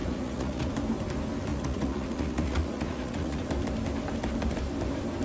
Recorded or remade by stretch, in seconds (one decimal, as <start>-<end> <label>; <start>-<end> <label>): 0.0-0.7 remade; 0.7-1.5 recorded; 1.5-3.5 remade; 3.5-5.2 recorded